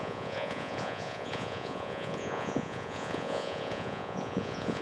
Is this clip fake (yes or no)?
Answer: yes